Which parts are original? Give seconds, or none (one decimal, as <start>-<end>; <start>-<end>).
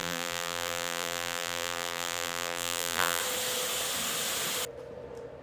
3.2-5.4